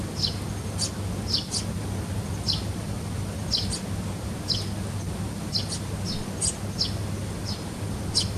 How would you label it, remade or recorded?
recorded